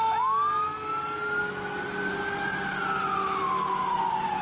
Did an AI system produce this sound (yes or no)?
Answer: no